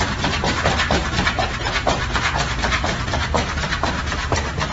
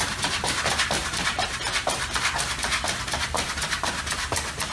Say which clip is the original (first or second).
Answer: first